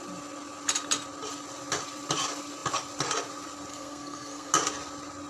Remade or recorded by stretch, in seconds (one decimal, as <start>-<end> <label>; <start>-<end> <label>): 0.0-3.7 recorded; 3.7-4.5 remade; 4.5-5.3 recorded